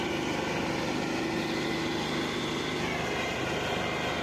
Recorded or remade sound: recorded